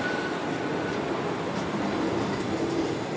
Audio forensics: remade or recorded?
remade